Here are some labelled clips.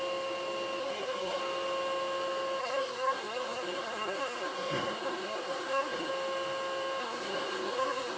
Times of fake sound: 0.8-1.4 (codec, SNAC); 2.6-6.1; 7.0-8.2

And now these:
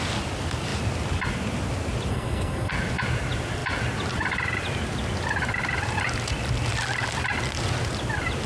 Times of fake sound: 2.1-2.7 (codec, SNAC)

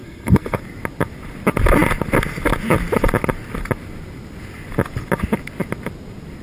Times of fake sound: 0.0-0.6 (codec, SNAC)

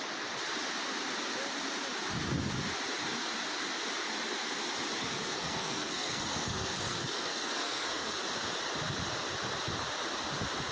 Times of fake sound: 5.0-8.2 (codec, SNAC)

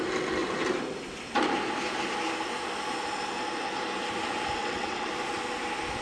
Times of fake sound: 4.6-5.1 (vocoder, WaveNeXt)